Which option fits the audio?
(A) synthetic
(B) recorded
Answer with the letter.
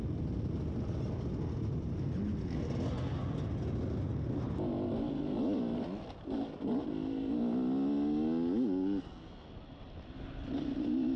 B